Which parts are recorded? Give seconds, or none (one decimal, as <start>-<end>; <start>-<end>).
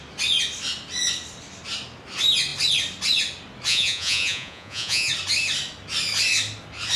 0.0-3.7; 5.1-7.0